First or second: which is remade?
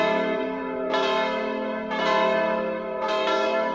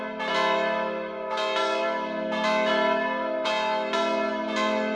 first